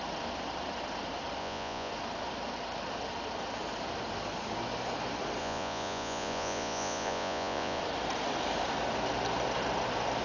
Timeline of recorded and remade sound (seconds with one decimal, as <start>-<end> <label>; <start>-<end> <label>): 0.0-1.4 recorded; 1.4-1.9 remade; 1.9-5.4 recorded; 5.4-7.8 remade; 7.8-10.2 recorded